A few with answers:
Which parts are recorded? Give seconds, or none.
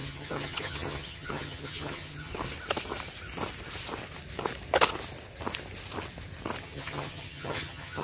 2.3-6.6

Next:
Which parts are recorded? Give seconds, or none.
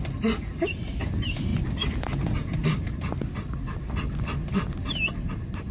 0.0-5.7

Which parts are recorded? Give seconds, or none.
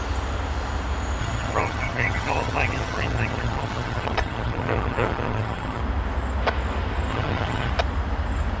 0.0-1.2; 5.8-7.1; 7.7-8.6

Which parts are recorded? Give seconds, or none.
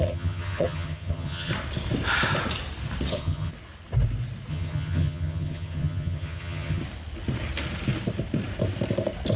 1.5-3.1; 3.5-4.5; 6.8-9.4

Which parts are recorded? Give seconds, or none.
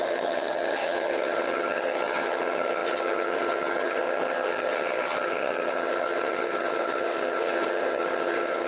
none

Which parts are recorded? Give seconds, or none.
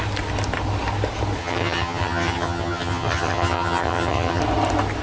0.0-1.4; 4.4-5.0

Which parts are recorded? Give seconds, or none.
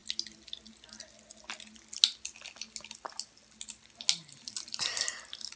0.0-5.6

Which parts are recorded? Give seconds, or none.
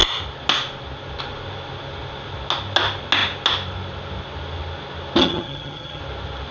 0.0-5.2; 6.0-6.5